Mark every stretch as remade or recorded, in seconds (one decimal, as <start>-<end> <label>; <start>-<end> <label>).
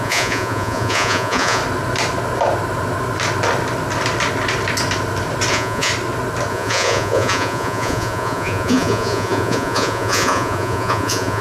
0.0-1.6 remade; 1.6-5.5 recorded; 5.5-5.9 remade; 5.9-6.5 recorded; 6.5-11.4 remade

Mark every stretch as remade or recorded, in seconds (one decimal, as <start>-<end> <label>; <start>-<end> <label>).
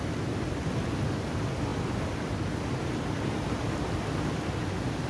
0.0-5.1 recorded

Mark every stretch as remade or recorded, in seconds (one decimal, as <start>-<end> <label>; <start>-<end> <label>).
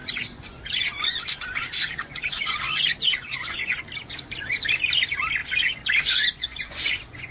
0.0-3.8 remade; 3.8-5.4 recorded; 5.4-7.3 remade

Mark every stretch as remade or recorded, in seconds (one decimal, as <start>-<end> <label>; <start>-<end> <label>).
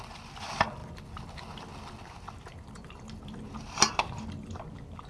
0.0-5.1 recorded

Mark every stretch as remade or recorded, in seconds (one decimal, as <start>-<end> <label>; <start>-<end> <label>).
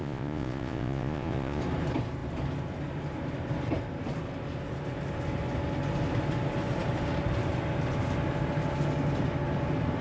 0.0-1.6 remade; 1.6-10.0 recorded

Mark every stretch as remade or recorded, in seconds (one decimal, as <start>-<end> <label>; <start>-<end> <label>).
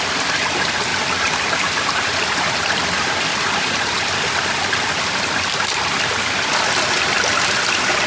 0.0-8.1 recorded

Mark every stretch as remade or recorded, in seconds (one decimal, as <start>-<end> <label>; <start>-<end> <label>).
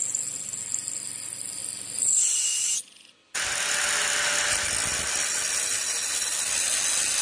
0.0-7.2 recorded